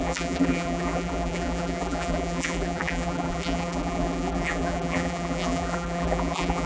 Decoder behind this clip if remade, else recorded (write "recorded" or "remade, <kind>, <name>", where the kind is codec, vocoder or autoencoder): remade, vocoder, BigVGAN v2